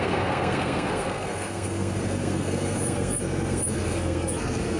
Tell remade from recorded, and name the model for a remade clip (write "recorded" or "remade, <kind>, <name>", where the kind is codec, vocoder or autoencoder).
remade, codec, SNAC